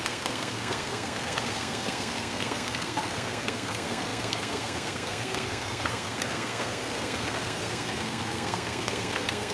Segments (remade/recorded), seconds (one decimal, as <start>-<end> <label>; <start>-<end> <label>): 0.0-9.5 remade